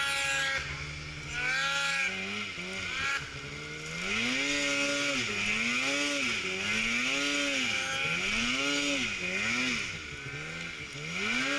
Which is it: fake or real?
real